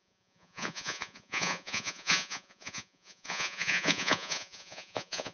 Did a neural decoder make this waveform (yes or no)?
yes